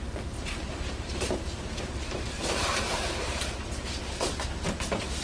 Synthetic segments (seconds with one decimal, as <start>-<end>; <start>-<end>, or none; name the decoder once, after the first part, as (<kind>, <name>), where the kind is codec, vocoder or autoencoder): 0.0-3.1 (vocoder, BigVGAN v2)